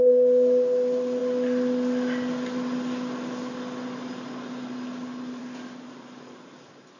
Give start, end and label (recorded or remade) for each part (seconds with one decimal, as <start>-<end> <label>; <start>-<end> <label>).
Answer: 0.0-7.0 recorded